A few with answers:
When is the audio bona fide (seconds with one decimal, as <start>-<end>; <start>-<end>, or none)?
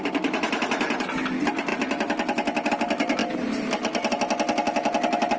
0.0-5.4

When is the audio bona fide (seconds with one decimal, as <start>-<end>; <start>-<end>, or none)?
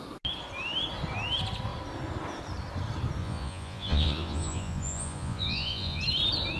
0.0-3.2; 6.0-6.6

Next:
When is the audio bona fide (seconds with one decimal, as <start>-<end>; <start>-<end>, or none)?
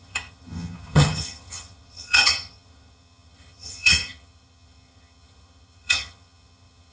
none